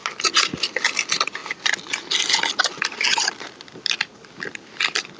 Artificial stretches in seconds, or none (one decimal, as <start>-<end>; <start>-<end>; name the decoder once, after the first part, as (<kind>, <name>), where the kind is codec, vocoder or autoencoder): none